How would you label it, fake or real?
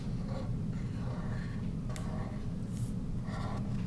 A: real